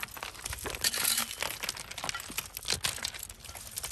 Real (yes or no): yes